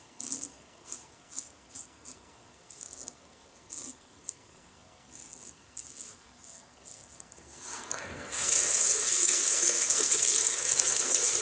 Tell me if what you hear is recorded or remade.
remade